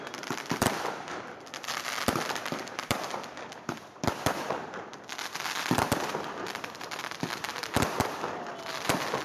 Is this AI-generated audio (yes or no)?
yes